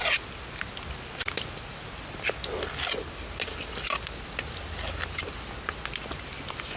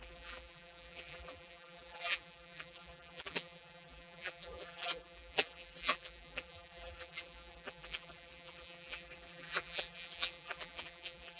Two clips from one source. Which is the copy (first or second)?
second